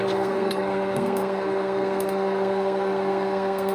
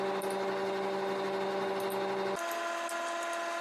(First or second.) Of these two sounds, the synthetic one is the first